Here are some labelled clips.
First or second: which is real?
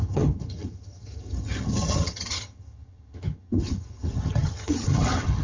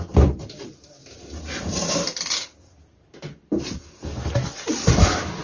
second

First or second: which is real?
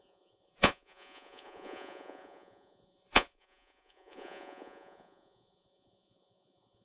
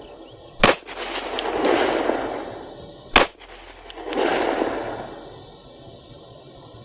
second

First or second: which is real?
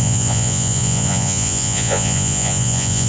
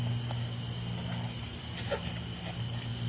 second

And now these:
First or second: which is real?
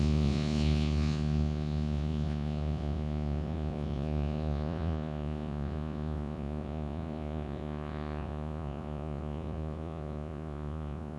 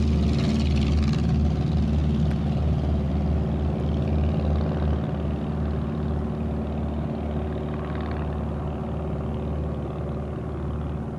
second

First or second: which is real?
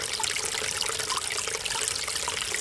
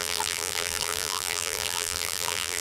first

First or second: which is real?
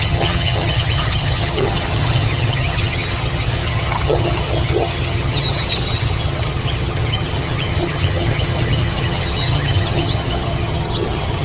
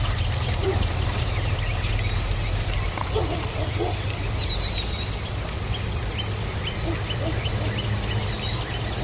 second